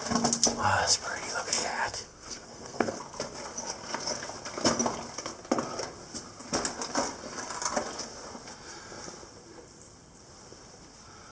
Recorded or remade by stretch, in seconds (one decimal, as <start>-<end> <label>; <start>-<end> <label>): 0.0-1.5 recorded; 1.5-3.0 remade; 3.0-11.3 recorded